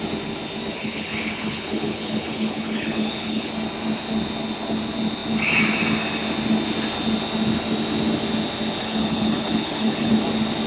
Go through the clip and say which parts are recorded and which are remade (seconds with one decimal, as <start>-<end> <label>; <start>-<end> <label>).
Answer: 0.0-0.8 recorded; 0.8-3.5 remade; 3.5-8.8 recorded; 8.8-10.1 remade; 10.1-10.7 recorded